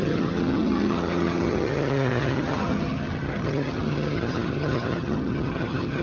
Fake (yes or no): yes